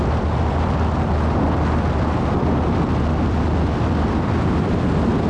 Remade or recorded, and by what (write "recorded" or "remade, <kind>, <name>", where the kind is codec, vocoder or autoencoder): remade, vocoder, BigVGAN v2